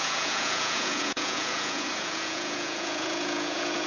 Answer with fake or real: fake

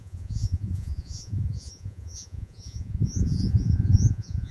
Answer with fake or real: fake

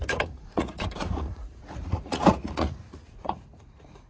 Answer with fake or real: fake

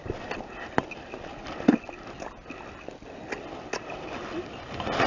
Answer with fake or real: real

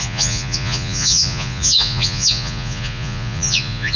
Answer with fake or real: fake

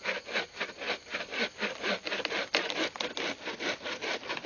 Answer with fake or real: real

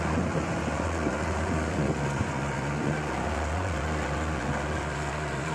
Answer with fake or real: fake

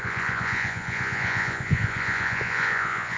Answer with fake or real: fake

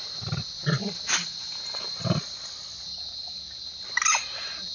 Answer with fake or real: real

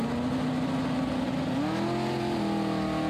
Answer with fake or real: real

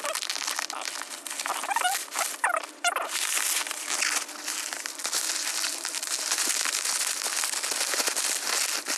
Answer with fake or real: real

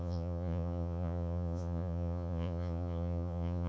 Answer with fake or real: fake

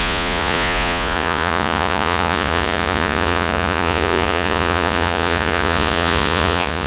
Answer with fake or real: fake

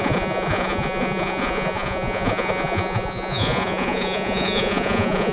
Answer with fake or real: fake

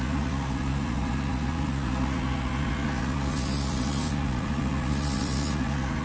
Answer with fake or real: fake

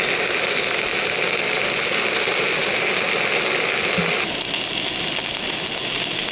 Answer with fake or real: real